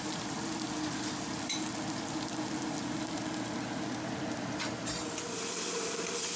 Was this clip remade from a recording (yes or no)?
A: yes